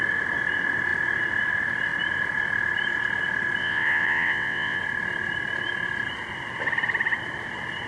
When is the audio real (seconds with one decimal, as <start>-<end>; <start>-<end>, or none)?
0.0-3.6; 4.8-7.9